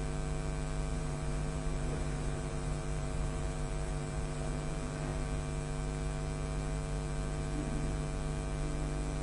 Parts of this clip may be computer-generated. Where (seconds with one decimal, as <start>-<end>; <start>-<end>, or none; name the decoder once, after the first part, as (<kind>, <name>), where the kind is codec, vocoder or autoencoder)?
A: 0.9-4.5 (vocoder, BigVGAN v2)